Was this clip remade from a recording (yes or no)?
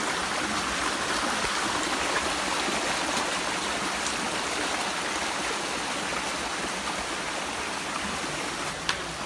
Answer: no